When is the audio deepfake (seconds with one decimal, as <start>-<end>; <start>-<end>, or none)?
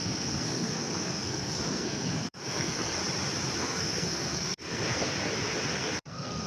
0.0-3.0; 3.6-5.1; 5.7-6.5